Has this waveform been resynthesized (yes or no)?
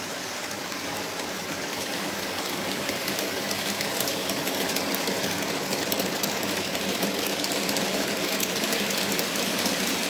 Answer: yes